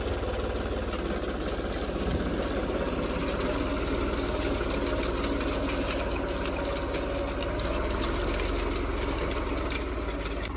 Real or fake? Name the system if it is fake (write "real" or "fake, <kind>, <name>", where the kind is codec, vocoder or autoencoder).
real